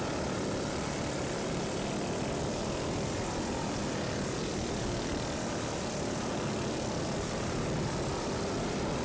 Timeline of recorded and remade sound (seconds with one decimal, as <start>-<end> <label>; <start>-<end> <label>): 0.0-9.0 recorded